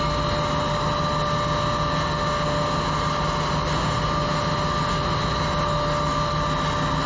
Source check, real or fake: real